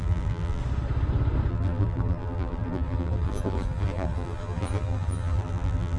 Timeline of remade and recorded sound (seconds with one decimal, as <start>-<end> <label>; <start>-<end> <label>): 0.0-0.6 remade; 0.6-1.5 recorded; 1.5-6.0 remade